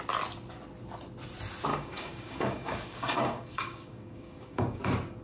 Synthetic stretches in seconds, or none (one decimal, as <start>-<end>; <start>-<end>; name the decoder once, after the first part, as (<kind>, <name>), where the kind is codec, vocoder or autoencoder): 1.7-4.8 (codec, DAC)